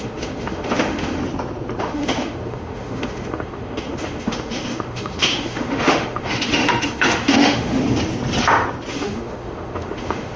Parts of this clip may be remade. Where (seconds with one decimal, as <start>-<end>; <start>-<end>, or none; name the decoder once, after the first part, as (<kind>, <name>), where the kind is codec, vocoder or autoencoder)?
0.0-1.2 (autoencoder, DAC-VAE); 1.8-7.8; 8.9-10.4